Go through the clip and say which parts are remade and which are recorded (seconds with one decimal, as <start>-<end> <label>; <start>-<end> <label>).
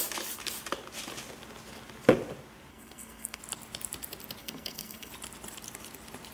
0.0-2.7 recorded; 2.7-3.4 remade; 3.4-4.4 recorded; 4.4-5.1 remade; 5.1-6.3 recorded